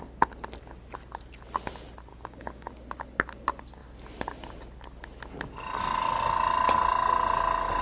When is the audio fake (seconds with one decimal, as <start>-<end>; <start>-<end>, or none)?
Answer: 2.1-2.7